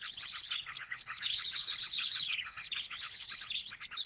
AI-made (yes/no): yes